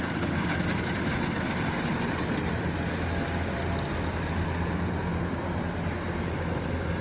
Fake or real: real